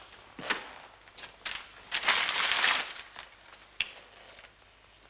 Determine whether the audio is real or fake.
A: real